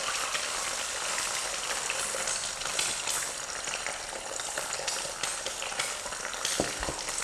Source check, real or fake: real